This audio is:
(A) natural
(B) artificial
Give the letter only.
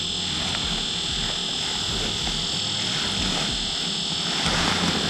A